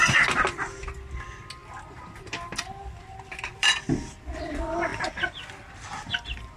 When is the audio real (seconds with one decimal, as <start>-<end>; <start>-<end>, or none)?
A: 0.0-3.5; 4.4-4.9